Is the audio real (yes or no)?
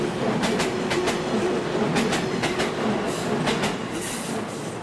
yes